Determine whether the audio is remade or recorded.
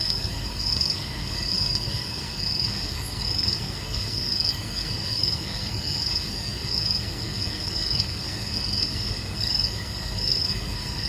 remade